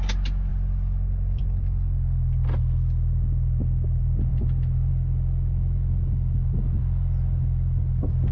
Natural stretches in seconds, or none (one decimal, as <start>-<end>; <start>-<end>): 0.0-0.5; 2.6-4.3; 4.9-8.3